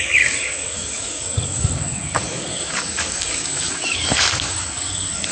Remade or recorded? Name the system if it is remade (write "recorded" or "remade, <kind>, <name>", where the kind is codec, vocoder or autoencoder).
remade, codec, DAC